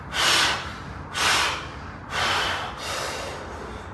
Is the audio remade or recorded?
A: recorded